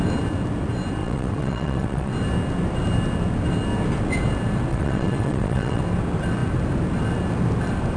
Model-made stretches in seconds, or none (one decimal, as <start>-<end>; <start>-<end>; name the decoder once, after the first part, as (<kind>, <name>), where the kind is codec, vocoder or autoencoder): 1.0-2.1 (vocoder, WaveNeXt); 4.7-5.8